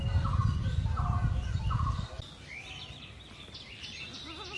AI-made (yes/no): no